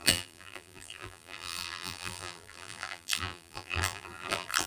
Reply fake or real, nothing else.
fake